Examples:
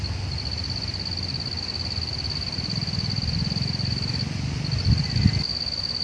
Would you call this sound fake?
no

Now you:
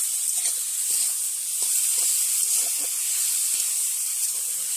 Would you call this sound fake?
yes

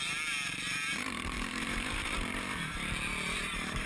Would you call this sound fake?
yes